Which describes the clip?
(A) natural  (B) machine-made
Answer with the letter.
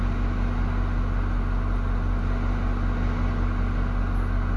A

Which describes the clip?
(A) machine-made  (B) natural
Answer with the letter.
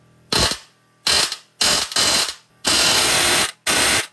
B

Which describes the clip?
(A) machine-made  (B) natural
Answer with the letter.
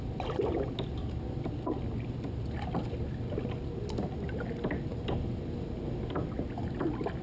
B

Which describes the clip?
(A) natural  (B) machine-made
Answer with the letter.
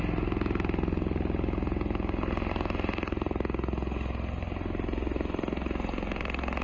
A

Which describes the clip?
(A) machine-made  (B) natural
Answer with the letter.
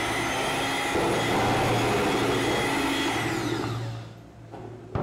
B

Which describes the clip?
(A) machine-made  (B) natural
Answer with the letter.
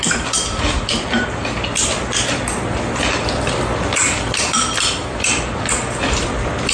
A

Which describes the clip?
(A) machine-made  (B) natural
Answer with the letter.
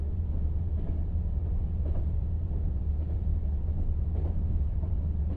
A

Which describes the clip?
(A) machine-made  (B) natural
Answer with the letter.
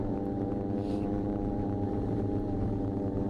A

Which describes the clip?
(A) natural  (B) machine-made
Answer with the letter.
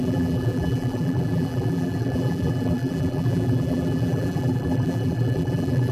B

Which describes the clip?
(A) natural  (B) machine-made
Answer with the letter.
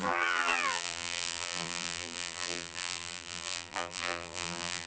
B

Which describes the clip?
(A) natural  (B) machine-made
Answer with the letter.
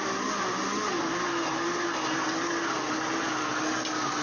A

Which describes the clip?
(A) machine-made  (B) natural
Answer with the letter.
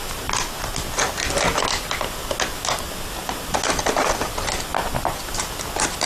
B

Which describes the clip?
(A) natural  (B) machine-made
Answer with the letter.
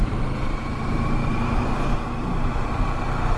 B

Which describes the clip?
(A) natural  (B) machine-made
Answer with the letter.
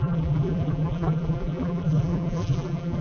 B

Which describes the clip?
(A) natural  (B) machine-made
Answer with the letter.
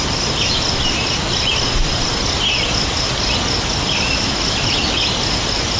A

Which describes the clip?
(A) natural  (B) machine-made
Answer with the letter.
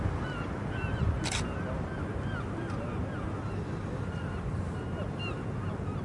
A